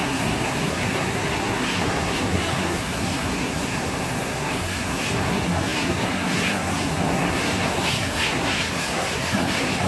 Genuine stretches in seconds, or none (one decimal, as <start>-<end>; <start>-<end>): none